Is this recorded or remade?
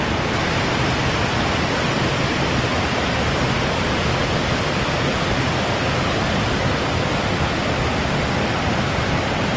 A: recorded